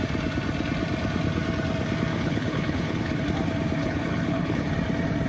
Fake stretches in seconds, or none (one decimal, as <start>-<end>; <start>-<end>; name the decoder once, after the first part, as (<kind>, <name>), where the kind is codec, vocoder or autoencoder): 2.1-3.2 (codec, HILCodec); 3.8-4.7